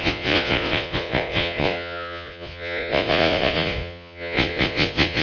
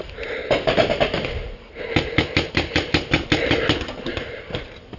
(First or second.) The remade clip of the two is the first